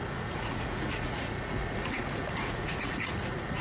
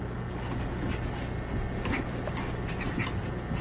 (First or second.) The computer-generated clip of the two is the first